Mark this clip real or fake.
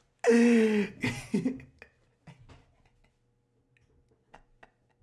real